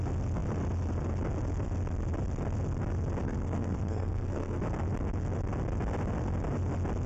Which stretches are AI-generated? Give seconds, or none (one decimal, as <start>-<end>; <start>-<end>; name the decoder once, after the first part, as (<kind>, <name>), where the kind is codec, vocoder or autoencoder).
3.2-4.6 (codec, SNAC)